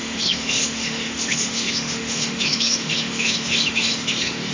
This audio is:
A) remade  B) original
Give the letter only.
A